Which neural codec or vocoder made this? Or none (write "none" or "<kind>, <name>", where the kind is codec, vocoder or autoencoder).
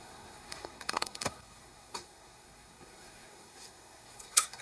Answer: codec, SNAC